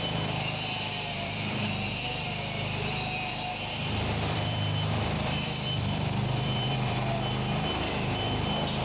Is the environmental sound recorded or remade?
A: remade